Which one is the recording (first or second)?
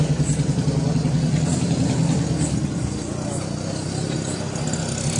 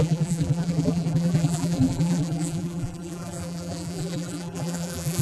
first